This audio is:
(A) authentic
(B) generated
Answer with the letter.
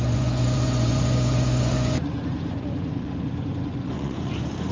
B